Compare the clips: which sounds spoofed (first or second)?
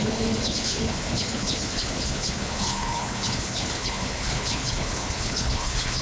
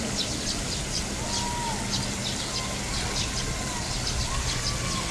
first